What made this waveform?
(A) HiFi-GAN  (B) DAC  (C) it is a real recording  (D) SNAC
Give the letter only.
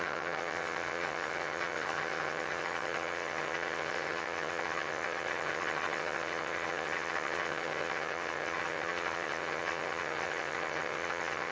A